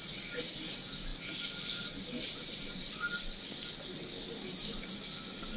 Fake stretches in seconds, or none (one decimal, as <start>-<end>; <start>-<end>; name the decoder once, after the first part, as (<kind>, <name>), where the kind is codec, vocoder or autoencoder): none